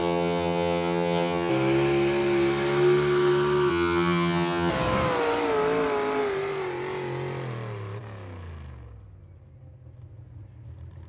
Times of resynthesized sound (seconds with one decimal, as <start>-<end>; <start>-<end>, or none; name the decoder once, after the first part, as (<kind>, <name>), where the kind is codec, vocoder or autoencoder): 0.0-1.5 (vocoder, HiFi-GAN); 3.7-4.7

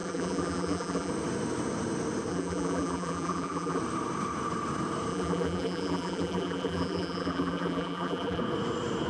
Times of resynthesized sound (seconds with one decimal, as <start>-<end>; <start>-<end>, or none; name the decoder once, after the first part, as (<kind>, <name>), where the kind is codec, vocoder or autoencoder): 0.0-1.1 (vocoder, BigVGAN v2); 2.3-3.8; 5.1-8.4